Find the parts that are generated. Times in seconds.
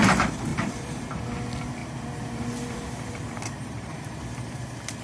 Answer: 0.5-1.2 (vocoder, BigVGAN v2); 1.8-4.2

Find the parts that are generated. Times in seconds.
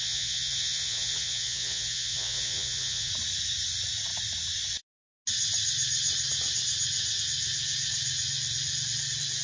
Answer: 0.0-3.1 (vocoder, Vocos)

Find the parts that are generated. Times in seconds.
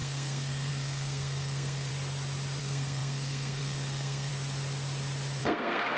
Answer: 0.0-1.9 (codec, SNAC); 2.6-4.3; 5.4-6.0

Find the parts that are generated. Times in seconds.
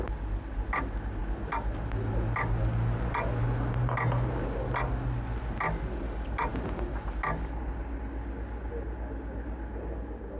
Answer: none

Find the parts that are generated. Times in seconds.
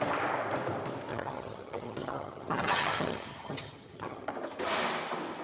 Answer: 1.1-4.3 (vocoder, HiFi-GAN)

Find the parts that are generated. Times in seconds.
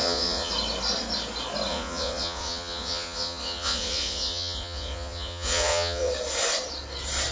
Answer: 0.0-0.5 (vocoder, Vocos); 1.7-6.1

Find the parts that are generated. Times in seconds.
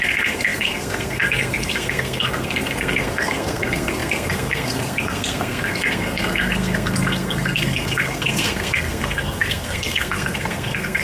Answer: 0.0-11.0 (codec, SNAC)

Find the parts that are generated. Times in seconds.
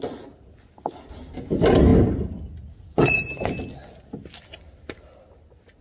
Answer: none